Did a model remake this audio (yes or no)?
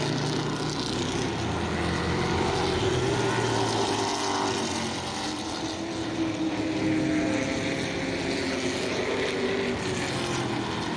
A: no